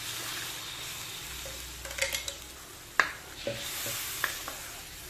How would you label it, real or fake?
real